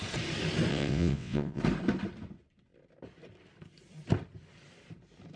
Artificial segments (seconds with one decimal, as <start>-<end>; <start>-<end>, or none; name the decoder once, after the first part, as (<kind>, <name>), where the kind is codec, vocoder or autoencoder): 0.7-1.6 (vocoder, WaveNeXt)

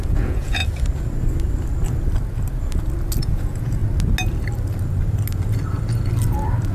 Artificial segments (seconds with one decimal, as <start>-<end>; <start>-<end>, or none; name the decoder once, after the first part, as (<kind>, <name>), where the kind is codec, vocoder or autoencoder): 0.0-0.6 (vocoder, Vocos); 3.2-3.8

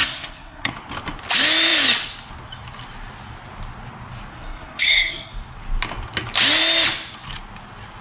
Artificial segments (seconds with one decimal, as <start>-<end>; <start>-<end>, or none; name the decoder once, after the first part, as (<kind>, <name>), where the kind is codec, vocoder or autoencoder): 0.0-0.7 (codec, SNAC); 4.3-5.3